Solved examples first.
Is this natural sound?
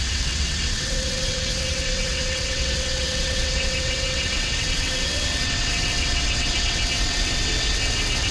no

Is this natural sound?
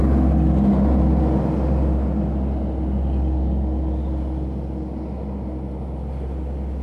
yes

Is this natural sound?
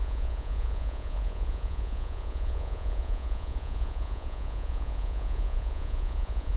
no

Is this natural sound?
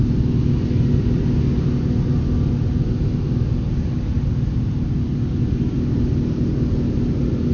yes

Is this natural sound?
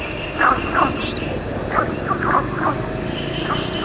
yes